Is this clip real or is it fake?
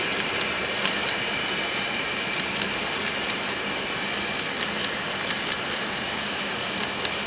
real